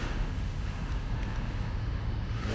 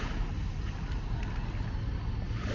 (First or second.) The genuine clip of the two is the second